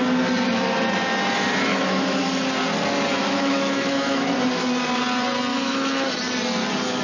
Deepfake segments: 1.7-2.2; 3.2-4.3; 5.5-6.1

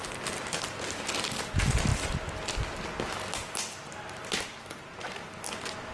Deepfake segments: none